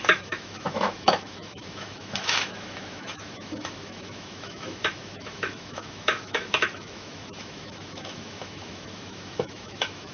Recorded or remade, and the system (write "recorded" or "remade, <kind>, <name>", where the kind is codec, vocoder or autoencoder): remade, autoencoder, DAC-VAE